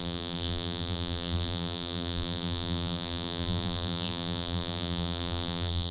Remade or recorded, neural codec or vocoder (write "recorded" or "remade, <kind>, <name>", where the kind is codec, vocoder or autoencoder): remade, vocoder, BigVGAN v2